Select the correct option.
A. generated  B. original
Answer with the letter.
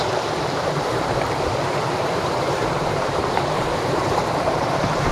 A